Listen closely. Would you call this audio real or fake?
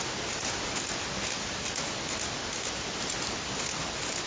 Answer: real